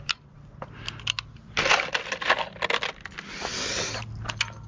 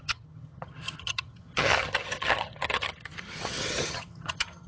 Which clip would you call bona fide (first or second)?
first